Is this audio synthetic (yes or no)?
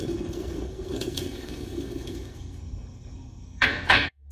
yes